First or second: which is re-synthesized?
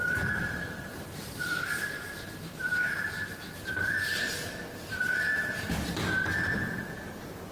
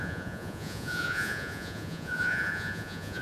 second